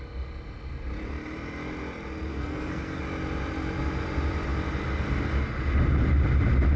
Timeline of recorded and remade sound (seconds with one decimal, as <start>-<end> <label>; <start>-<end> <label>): 0.0-2.3 recorded; 2.3-3.0 remade; 3.0-6.8 recorded